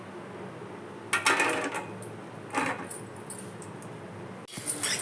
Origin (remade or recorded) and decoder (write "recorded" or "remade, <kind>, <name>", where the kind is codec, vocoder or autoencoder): recorded